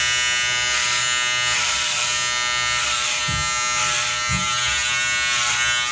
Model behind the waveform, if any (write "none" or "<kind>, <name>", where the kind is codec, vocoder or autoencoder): none